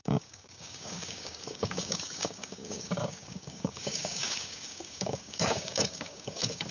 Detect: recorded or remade remade